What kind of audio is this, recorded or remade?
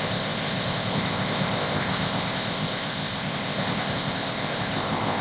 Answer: remade